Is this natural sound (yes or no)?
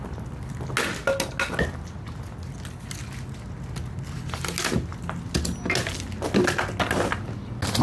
yes